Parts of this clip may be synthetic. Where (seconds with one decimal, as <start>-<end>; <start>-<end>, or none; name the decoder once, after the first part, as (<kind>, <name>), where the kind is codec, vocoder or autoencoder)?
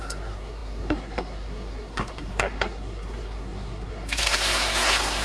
0.0-5.2 (codec, SNAC)